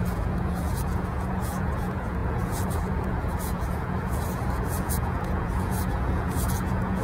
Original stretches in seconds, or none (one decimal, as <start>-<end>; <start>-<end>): none